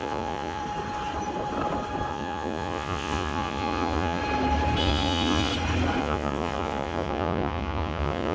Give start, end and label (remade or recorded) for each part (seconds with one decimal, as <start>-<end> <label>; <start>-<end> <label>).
0.0-0.6 remade; 0.6-2.1 recorded; 2.1-4.2 remade; 4.2-4.8 recorded; 4.8-5.5 remade; 5.5-6.0 recorded; 6.0-8.3 remade